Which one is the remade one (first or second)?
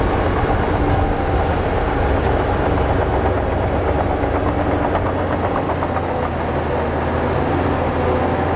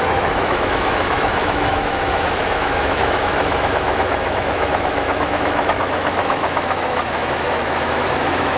second